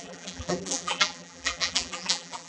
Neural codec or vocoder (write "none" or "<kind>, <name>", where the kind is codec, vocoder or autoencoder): vocoder, BigVGAN v2